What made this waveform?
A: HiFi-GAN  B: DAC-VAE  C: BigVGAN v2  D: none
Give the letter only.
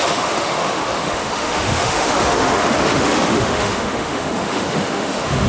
B